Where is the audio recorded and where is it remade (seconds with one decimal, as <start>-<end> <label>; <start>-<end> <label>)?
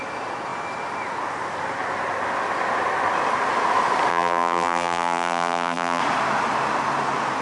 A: 0.0-4.1 recorded; 4.1-6.0 remade; 6.0-7.4 recorded